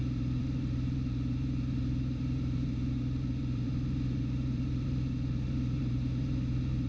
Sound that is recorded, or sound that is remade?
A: remade